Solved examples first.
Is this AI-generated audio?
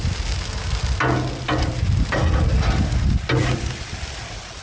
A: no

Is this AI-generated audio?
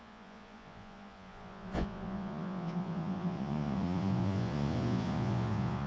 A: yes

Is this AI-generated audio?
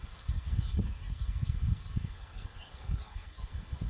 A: yes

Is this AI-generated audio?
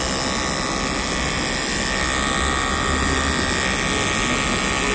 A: no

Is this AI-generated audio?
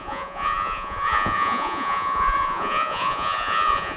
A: yes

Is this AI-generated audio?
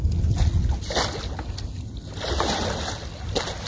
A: no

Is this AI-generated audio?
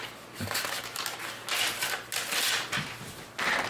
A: no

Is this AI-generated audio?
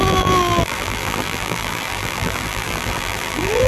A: yes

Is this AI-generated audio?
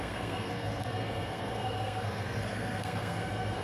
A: yes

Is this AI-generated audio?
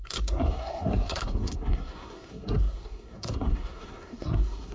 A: yes